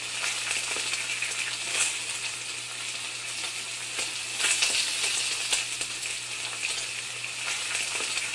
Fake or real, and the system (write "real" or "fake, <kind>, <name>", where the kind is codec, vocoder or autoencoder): real